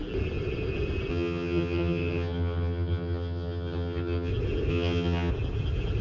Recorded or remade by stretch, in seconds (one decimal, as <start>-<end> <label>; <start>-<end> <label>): 0.0-1.1 recorded; 1.1-4.3 remade; 4.3-4.7 recorded; 4.7-5.3 remade; 5.3-6.0 recorded

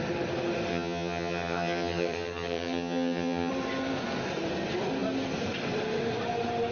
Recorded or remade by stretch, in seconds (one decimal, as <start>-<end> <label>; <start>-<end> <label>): 0.0-0.7 recorded; 0.7-3.5 remade; 3.5-6.7 recorded

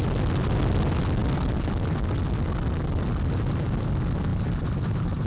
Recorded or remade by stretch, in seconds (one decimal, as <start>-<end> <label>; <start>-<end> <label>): 0.0-5.3 recorded

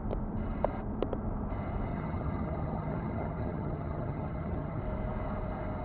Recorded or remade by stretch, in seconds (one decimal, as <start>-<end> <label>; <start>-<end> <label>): 0.0-1.9 recorded; 1.9-4.8 remade; 4.8-5.8 recorded

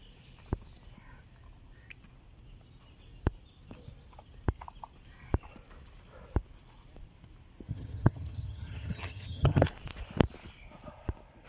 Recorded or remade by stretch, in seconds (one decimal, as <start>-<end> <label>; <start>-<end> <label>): 0.0-7.7 recorded; 7.7-9.7 remade; 9.7-11.5 recorded

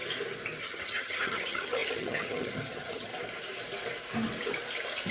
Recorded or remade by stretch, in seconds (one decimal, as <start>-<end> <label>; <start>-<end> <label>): 0.0-0.6 recorded; 0.6-3.1 remade; 3.1-5.1 recorded